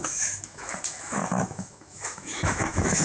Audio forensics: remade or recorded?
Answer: remade